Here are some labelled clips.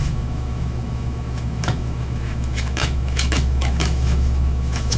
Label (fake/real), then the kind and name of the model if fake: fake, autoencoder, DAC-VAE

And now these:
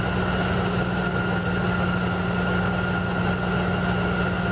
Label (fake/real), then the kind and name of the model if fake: real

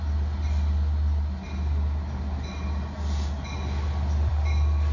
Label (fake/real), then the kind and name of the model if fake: real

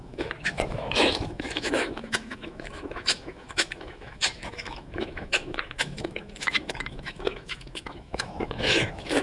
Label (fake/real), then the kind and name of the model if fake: fake, autoencoder, DAC-VAE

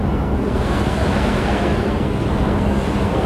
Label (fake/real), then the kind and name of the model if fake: fake, codec, SNAC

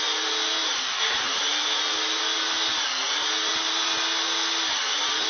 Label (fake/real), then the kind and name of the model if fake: real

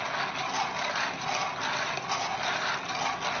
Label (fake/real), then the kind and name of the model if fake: real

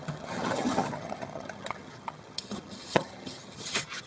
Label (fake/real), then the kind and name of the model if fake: fake, vocoder, HiFi-GAN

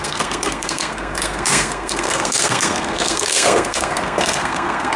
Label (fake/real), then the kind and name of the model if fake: fake, codec, SNAC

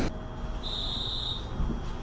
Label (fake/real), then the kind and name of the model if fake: real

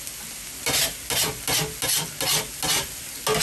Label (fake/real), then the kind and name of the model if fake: real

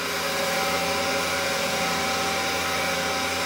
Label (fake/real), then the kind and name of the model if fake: real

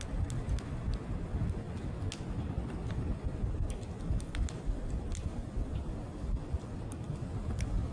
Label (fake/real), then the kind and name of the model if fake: fake, vocoder, BigVGAN v2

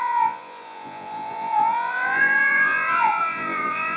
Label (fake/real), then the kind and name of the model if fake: fake, vocoder, Vocos